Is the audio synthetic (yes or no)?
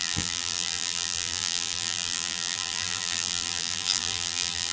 yes